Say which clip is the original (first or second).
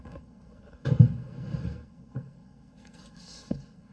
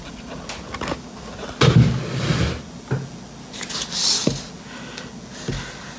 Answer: second